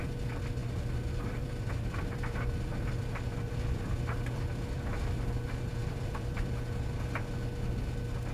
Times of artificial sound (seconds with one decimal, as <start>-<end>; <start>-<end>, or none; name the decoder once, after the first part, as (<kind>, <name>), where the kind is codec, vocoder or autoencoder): 0.6-5.3 (vocoder, BigVGAN v2); 5.8-6.5